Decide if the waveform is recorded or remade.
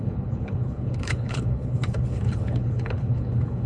remade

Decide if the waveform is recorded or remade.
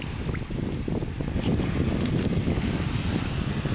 recorded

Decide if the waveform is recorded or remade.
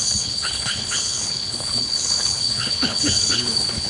remade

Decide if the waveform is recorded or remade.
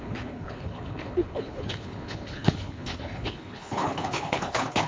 remade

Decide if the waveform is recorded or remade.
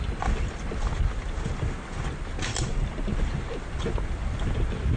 recorded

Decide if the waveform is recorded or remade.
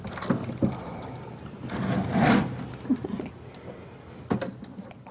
recorded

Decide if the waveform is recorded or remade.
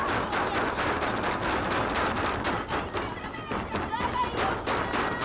recorded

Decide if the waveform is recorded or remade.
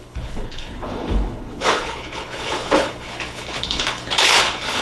remade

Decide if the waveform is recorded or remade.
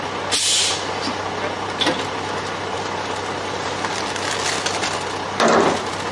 recorded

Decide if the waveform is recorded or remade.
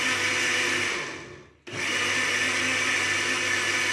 recorded